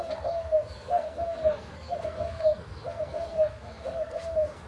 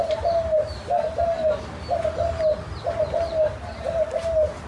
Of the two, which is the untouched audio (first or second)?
second